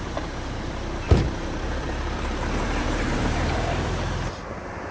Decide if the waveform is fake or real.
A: fake